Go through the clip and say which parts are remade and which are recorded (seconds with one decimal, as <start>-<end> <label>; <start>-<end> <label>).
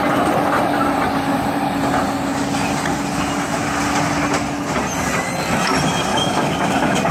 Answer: 0.0-6.1 recorded; 6.1-7.1 remade